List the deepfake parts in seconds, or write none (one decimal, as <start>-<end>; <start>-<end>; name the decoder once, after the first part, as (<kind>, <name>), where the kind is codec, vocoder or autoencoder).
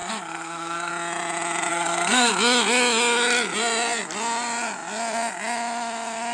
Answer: 0.0-0.9 (codec, SNAC); 1.7-2.3